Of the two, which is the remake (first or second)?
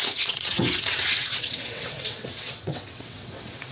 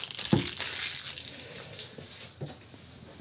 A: first